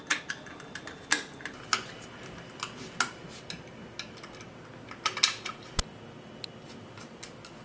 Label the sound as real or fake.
real